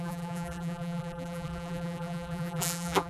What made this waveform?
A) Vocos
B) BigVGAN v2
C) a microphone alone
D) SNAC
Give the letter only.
B